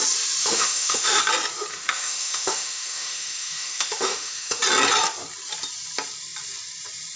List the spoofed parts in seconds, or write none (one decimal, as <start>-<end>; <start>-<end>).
0.4-1.2; 1.7-4.6